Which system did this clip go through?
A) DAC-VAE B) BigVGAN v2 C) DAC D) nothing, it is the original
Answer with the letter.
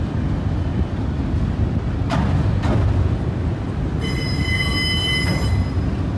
D